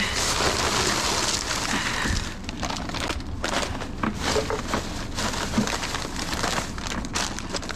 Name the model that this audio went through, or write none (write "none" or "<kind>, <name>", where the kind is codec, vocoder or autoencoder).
none